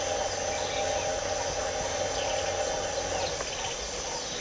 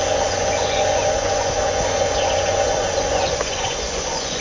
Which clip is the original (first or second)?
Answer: first